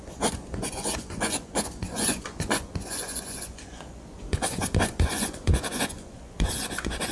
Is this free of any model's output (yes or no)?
no